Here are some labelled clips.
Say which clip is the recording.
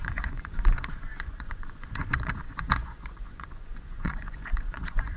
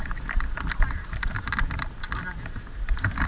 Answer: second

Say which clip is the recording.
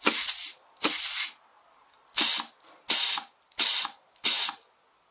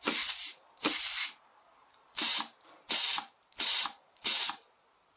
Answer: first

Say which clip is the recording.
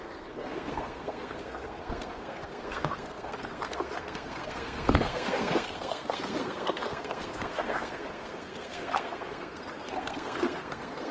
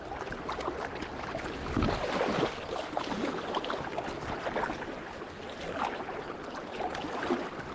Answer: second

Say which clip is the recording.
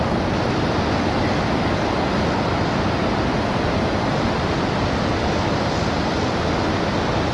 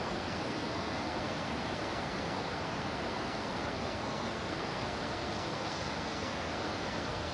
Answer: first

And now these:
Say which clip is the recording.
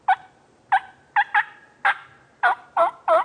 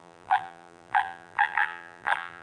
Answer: first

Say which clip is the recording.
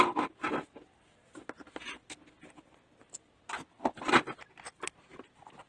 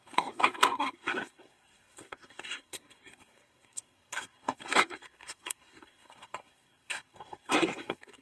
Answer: first